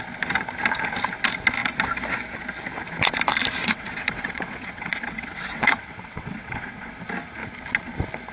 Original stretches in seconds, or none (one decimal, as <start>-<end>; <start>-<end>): 0.0-3.6; 7.0-8.3